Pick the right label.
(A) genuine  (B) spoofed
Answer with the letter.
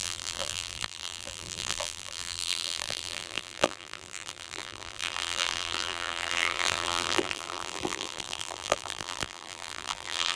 B